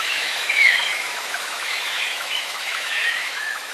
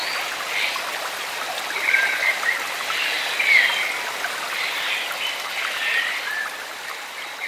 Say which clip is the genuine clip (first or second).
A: second